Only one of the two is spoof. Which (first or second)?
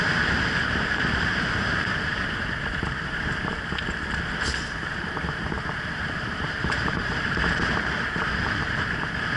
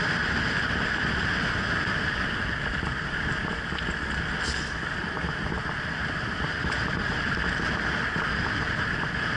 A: first